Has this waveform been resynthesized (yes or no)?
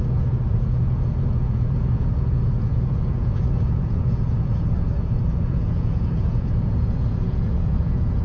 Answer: yes